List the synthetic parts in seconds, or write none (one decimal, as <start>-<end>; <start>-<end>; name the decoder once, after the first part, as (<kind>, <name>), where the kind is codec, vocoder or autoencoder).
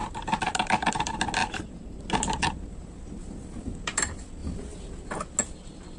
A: 1.4-2.0 (vocoder, BigVGAN v2)